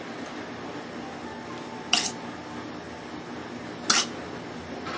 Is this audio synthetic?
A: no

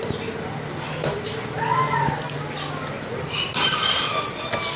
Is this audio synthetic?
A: no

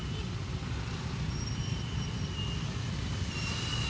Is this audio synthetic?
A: no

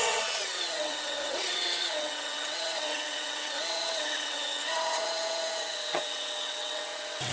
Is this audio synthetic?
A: yes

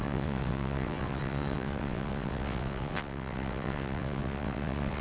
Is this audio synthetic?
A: yes